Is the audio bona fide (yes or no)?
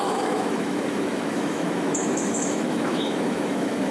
no